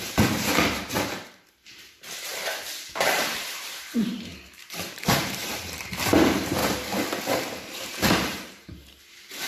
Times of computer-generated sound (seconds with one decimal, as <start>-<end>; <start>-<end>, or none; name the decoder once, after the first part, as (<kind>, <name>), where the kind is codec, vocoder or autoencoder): 0.0-6.6 (vocoder, BigVGAN v2); 7.2-9.5